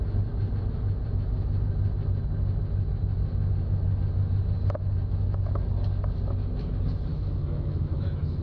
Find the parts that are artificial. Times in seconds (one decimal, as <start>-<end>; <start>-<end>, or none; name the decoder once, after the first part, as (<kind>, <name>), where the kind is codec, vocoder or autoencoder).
7.1-8.4 (autoencoder, DAC-VAE)